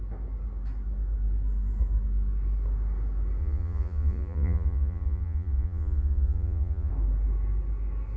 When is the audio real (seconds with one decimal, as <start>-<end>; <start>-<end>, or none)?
0.0-3.4; 6.9-8.2